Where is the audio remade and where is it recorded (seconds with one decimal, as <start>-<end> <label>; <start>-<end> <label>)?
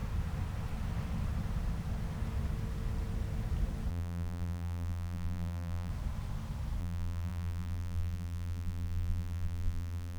0.0-3.9 recorded; 3.9-5.9 remade; 5.9-6.8 recorded; 6.8-10.2 remade